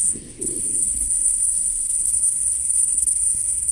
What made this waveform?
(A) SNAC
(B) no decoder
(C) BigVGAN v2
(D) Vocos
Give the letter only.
A